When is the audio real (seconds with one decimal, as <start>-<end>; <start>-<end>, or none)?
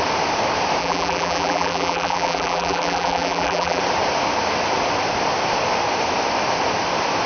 0.0-0.8; 3.8-7.3